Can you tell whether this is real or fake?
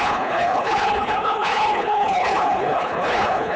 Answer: fake